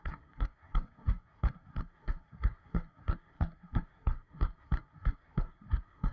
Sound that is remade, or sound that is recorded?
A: remade